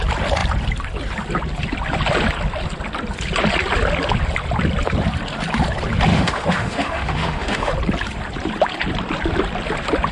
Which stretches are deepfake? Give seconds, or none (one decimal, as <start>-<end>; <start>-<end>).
6.1-7.7